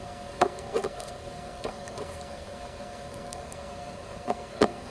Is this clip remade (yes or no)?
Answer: yes